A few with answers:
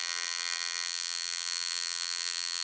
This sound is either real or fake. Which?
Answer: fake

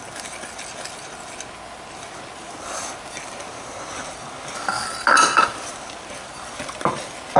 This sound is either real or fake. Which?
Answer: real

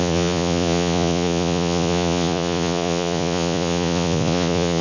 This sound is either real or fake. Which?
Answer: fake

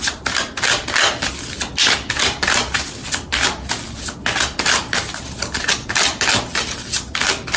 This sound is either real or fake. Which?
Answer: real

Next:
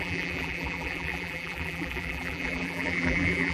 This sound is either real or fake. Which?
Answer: fake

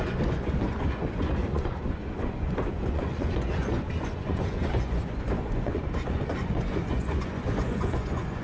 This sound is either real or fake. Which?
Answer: fake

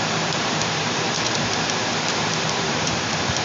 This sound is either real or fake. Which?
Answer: fake